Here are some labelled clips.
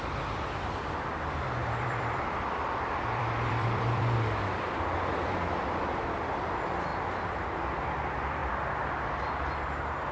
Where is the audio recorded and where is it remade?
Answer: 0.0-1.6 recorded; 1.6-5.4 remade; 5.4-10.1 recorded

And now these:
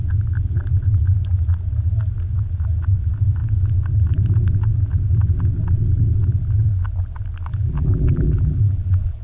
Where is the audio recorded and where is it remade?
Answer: 0.0-7.5 recorded; 7.5-9.2 remade

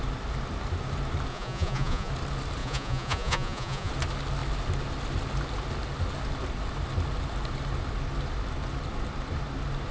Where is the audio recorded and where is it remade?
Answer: 0.0-1.3 recorded; 1.3-2.1 remade; 2.1-2.6 recorded; 2.6-3.9 remade; 3.9-9.9 recorded